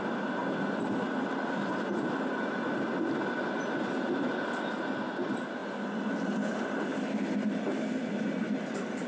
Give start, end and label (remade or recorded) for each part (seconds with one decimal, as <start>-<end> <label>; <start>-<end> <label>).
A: 0.0-9.1 recorded